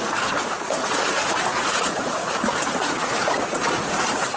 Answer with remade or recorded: remade